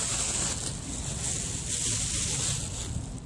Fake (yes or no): no